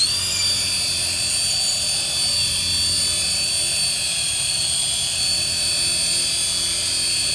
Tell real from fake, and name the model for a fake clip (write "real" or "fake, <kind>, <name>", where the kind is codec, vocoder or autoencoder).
real